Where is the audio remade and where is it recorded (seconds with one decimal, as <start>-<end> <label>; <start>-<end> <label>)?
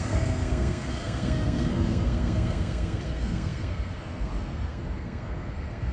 0.0-5.9 remade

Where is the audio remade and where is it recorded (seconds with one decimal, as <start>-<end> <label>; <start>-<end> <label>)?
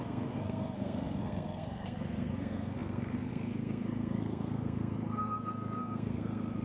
0.0-6.6 remade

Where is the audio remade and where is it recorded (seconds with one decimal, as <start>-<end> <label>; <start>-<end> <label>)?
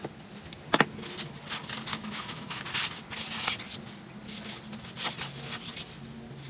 0.0-1.9 recorded; 1.9-2.6 remade; 2.6-6.5 recorded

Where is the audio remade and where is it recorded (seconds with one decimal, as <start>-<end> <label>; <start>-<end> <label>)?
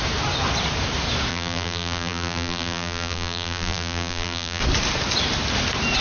0.0-1.3 recorded; 1.3-4.6 remade; 4.6-6.0 recorded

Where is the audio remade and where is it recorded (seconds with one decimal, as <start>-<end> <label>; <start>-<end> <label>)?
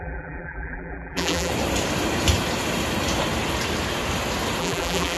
0.0-1.5 remade; 1.5-4.6 recorded; 4.6-5.2 remade